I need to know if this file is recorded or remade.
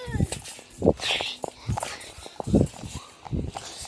recorded